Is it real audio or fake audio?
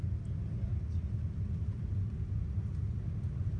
real